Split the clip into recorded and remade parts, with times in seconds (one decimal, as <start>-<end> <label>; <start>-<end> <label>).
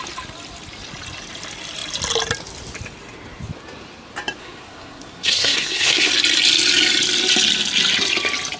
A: 0.0-4.4 recorded; 4.4-6.1 remade; 6.1-8.6 recorded